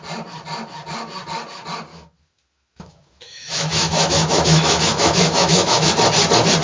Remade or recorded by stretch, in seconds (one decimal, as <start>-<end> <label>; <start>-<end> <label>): 0.0-1.9 recorded; 1.9-5.9 remade; 5.9-6.6 recorded